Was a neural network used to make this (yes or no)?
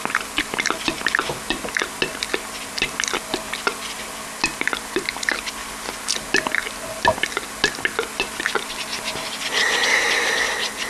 no